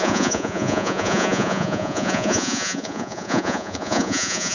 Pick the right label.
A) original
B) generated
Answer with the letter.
B